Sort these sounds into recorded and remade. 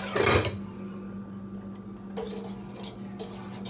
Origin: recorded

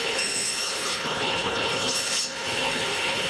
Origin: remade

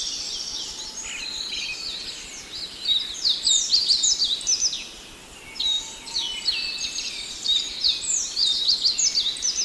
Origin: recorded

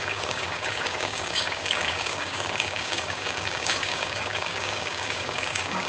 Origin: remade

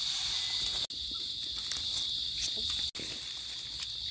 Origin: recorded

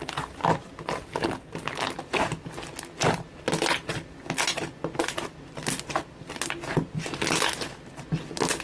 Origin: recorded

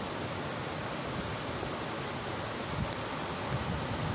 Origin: recorded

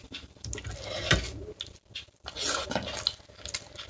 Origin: recorded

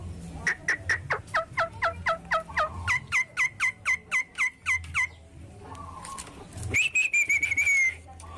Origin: recorded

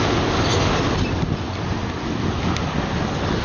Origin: recorded